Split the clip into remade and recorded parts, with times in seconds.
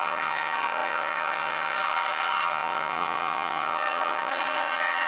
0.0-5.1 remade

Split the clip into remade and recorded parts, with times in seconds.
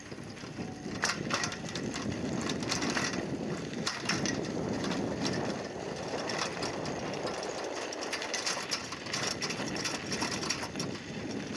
0.0-8.8 remade; 8.8-10.4 recorded; 10.4-11.6 remade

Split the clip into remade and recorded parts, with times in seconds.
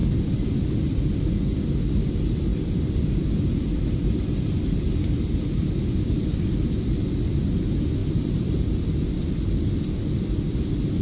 0.0-1.0 remade; 1.0-2.5 recorded; 2.5-4.3 remade; 4.3-8.0 recorded; 8.0-8.6 remade; 8.6-11.0 recorded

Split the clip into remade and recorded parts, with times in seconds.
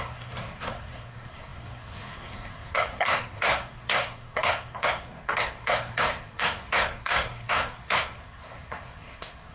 0.0-9.5 remade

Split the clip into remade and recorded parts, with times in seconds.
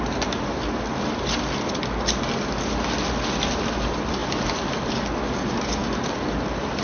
0.0-6.8 recorded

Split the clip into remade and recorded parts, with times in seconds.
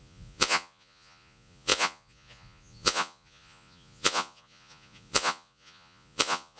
0.0-6.6 remade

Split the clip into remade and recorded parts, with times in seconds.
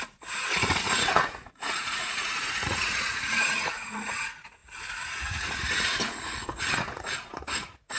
0.0-8.0 remade